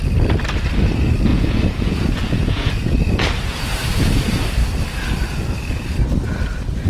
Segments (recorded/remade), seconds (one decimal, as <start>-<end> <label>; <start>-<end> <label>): 0.0-1.3 recorded; 1.3-3.6 remade; 3.6-6.9 recorded